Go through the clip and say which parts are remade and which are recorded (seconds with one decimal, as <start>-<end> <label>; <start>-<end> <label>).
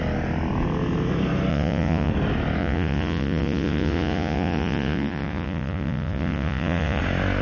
0.0-1.5 recorded; 1.5-2.1 remade; 2.1-2.6 recorded; 2.6-7.0 remade; 7.0-7.4 recorded